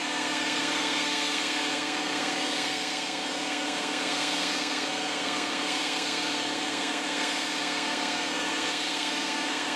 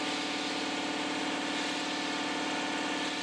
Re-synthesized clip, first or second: first